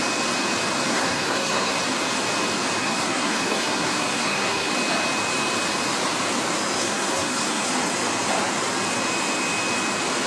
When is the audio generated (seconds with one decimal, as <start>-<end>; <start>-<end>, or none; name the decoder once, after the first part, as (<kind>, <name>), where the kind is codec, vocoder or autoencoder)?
0.9-1.8 (codec, SNAC); 2.8-4.7; 6.8-7.7